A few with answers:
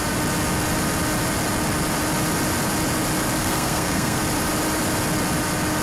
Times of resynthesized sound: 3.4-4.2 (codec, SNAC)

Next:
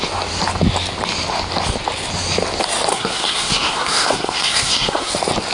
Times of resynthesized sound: 2.9-5.1 (codec, SNAC)

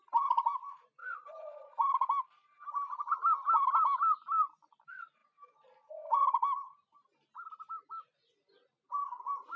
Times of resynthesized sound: none

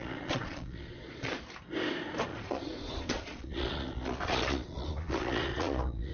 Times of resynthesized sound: 0.0-1.4 (vocoder, Vocos); 2.3-6.1